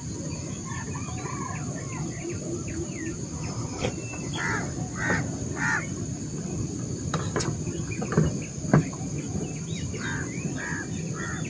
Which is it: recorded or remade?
remade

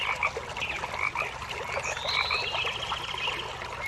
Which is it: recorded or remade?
recorded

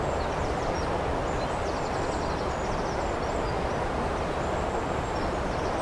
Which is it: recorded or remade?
recorded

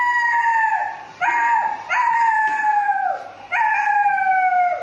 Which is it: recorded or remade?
recorded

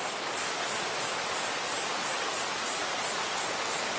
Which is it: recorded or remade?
recorded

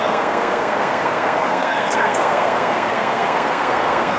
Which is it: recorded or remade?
remade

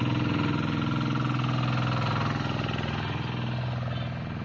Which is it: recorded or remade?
recorded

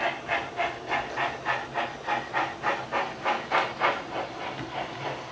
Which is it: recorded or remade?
recorded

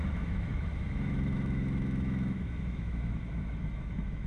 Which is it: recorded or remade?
remade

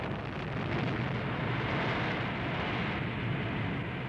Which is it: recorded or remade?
recorded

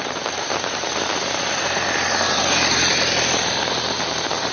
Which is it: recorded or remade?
remade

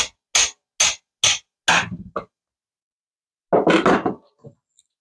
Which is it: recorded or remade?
recorded